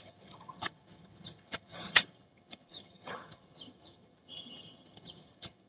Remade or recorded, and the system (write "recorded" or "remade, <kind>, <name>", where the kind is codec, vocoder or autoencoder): remade, vocoder, HiFi-GAN